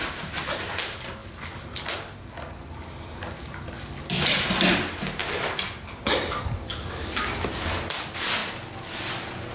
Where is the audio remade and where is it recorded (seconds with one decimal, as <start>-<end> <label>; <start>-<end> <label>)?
0.0-9.5 recorded